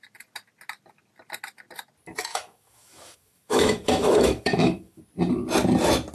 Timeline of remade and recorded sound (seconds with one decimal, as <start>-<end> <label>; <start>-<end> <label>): 0.0-2.3 recorded; 2.3-5.0 remade; 5.0-6.1 recorded